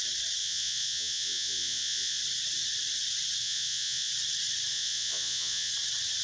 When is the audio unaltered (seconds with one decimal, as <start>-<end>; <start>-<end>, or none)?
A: 0.0-0.4; 2.2-3.4; 4.1-4.7; 5.7-6.2

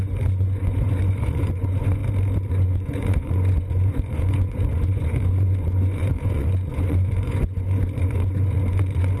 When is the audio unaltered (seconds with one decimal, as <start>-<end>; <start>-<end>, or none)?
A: 2.0-2.5